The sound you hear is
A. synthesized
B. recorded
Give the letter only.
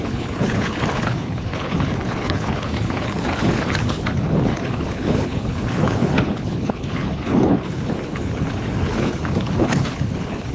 A